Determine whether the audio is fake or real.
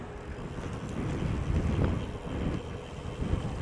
real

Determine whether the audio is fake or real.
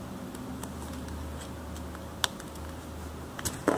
real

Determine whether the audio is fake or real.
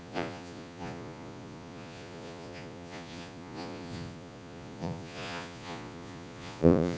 fake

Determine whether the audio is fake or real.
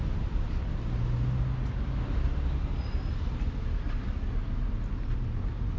real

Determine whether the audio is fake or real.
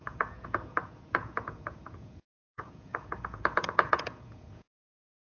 fake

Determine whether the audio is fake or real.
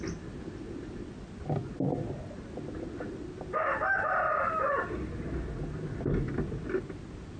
real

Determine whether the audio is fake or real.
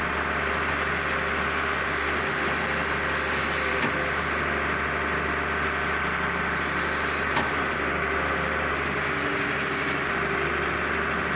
real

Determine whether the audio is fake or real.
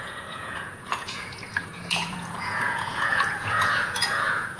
fake